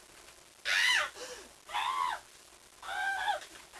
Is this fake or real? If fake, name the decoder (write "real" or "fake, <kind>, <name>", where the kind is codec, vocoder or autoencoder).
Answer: real